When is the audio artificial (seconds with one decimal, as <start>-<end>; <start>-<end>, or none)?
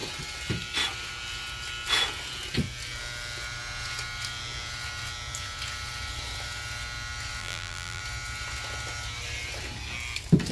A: 7.4-8.0